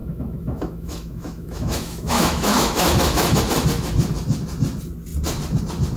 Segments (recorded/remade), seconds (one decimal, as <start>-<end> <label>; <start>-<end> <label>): 0.0-3.4 remade; 3.4-6.0 recorded